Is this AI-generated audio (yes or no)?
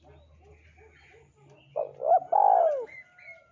no